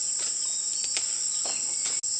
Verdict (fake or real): real